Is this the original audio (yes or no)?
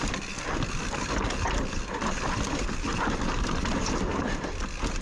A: yes